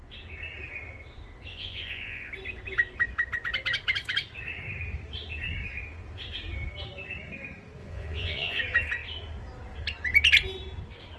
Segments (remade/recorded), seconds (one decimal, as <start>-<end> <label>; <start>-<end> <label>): 0.0-1.5 recorded; 1.5-2.3 remade; 2.3-7.8 recorded; 7.8-8.6 remade; 8.6-11.2 recorded